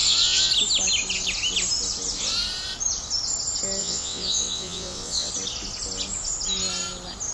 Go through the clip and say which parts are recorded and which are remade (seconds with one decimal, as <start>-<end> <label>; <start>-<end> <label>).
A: 0.0-0.5 remade; 0.5-3.8 recorded; 3.8-5.3 remade; 5.3-7.3 recorded